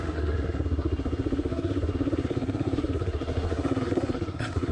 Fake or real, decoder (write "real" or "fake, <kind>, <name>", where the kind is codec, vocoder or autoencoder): fake, codec, SNAC